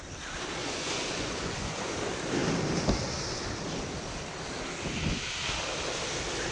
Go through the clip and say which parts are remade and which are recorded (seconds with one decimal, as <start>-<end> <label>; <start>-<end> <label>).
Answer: 0.0-0.6 recorded; 0.6-1.9 remade; 1.9-6.5 recorded